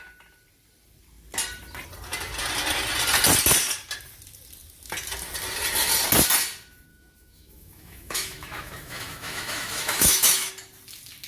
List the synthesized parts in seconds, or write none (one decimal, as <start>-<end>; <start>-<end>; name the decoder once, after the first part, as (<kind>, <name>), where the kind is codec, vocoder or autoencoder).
6.9-10.5 (autoencoder, DAC-VAE)

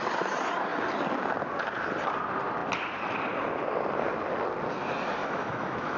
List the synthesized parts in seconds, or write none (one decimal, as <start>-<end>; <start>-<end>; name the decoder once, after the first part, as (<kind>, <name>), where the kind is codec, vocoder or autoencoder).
5.2-6.0 (autoencoder, DAC-VAE)

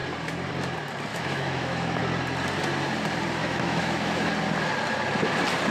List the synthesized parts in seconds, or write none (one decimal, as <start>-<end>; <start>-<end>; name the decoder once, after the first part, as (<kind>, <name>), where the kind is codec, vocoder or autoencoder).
1.1-2.0 (autoencoder, DAC-VAE); 3.4-4.3

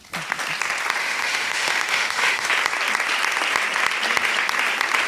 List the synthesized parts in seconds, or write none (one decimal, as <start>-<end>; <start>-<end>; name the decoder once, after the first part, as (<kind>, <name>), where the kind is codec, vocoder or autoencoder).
1.0-2.5 (autoencoder, DAC-VAE)

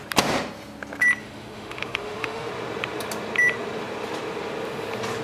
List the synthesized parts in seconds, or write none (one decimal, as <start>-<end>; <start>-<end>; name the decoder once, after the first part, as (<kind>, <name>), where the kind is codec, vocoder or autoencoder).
1.2-2.5 (autoencoder, DAC-VAE)

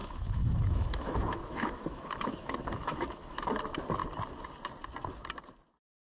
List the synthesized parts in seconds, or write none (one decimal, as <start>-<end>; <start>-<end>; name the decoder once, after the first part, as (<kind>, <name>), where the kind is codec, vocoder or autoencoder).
0.0-3.6 (autoencoder, DAC-VAE)

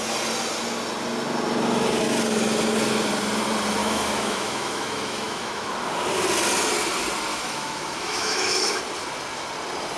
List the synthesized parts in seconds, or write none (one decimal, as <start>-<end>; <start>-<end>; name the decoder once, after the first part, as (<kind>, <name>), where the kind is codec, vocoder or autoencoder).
3.8-5.7 (autoencoder, DAC-VAE); 7.3-8.8